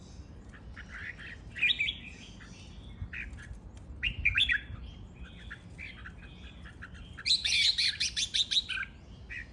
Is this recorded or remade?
recorded